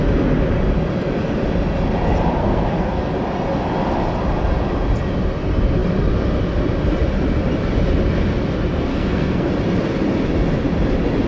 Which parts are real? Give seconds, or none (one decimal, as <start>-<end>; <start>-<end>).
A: 0.0-2.4; 3.1-8.9; 9.5-11.3